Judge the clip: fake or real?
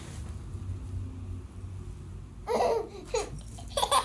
real